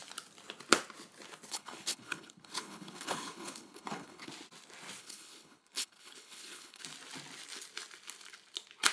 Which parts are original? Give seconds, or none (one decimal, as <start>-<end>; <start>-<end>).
0.0-1.5; 4.3-5.0; 6.8-8.9